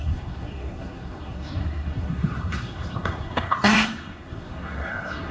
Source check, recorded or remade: remade